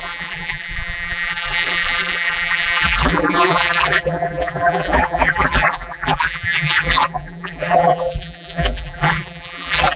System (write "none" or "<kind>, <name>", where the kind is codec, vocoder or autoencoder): vocoder, BigVGAN v2